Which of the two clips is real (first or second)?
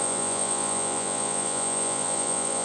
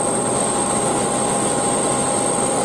second